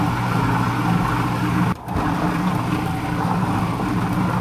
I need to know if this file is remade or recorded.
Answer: recorded